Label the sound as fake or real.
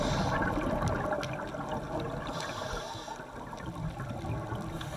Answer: real